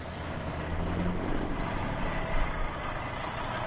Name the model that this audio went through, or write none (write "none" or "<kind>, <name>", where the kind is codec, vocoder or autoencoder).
none